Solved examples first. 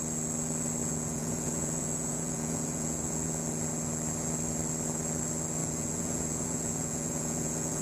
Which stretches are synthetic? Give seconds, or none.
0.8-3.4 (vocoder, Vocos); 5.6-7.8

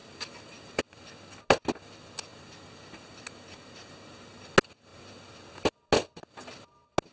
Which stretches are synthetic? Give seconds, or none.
0.0-0.8 (vocoder, BigVGAN v2); 2.3-4.5

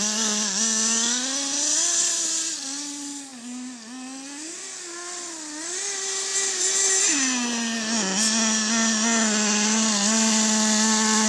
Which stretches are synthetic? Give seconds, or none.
none